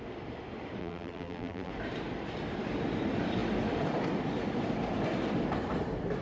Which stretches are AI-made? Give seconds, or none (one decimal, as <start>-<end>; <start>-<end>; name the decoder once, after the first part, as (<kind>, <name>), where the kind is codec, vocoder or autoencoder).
0.8-1.7 (vocoder, BigVGAN v2)